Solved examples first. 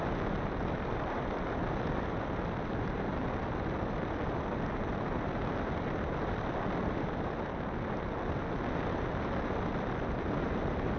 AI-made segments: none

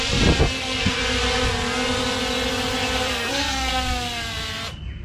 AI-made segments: 0.4-1.0 (codec, SNAC); 3.2-3.7

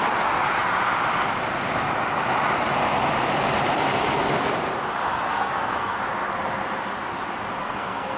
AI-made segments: 5.1-6.0 (codec, SNAC); 7.6-8.2

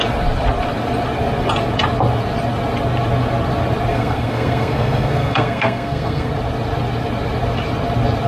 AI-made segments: 3.9-6.3 (codec, SNAC)

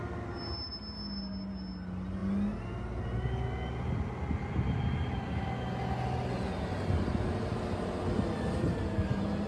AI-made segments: none

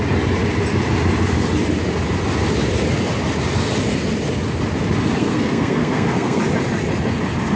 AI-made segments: 5.2-6.4 (codec, SNAC)

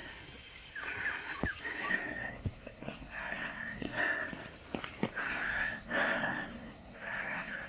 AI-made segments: 1.9-4.0 (codec, SNAC); 5.1-7.7

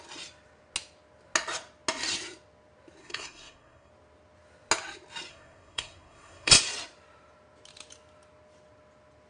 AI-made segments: 3.0-3.9 (codec, SNAC); 5.3-6.5